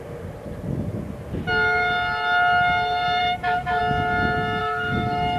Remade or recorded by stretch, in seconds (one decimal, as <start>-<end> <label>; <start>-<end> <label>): 0.0-3.2 recorded; 3.2-3.8 remade; 3.8-4.6 recorded; 4.6-5.4 remade